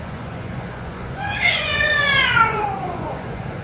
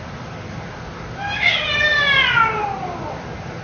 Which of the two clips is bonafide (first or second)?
second